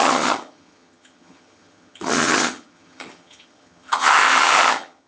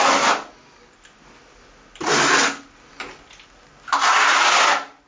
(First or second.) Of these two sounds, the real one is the second